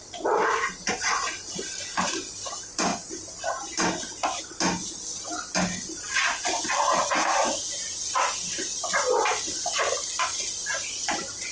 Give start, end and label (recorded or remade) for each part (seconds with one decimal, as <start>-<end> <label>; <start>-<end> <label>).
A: 0.0-11.5 recorded